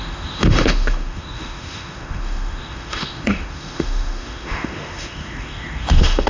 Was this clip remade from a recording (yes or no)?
yes